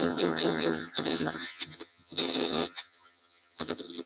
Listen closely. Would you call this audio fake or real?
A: fake